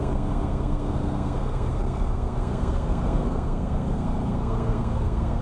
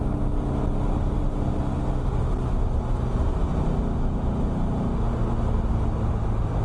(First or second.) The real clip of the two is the second